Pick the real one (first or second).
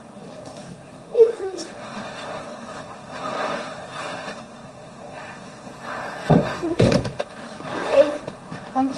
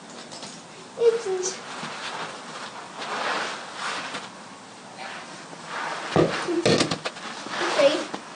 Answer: second